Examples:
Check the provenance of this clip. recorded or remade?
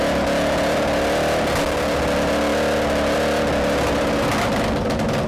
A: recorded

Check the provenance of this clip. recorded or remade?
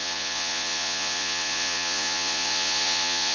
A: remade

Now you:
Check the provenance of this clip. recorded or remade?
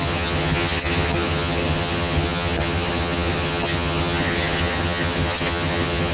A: remade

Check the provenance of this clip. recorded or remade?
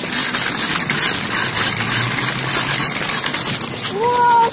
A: recorded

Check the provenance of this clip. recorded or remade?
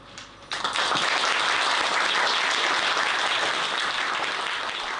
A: recorded